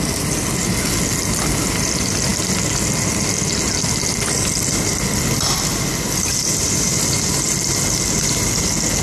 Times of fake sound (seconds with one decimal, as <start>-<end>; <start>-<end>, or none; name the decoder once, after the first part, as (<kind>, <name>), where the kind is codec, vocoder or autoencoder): none